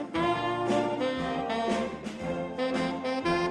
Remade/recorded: recorded